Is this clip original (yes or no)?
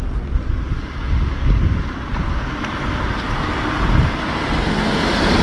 yes